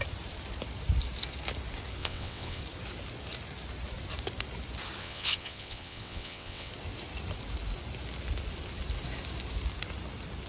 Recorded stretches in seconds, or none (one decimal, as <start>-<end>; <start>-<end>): 0.0-2.0; 2.6-5.0; 6.7-10.5